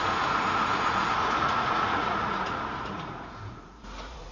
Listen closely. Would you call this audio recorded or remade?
remade